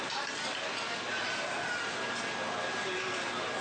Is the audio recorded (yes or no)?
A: yes